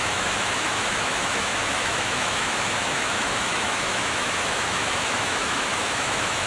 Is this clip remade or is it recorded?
remade